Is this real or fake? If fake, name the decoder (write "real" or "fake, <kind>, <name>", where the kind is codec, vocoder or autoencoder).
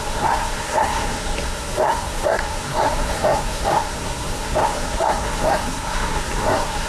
fake, codec, SNAC